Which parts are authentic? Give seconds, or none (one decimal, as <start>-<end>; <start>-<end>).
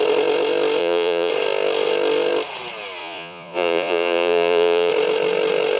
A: 0.0-0.8; 1.3-3.0; 4.9-5.8